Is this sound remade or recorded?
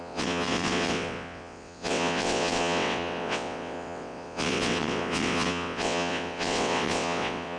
remade